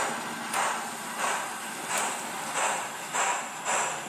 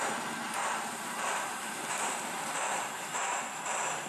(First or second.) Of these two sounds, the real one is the first